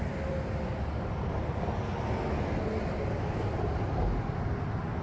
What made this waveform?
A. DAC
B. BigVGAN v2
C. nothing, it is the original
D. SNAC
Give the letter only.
C